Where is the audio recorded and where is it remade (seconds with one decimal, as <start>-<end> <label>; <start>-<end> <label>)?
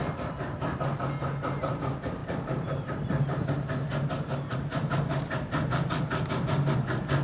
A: 0.0-7.2 recorded